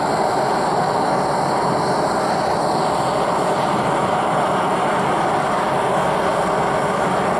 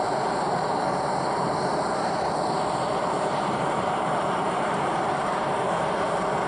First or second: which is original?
first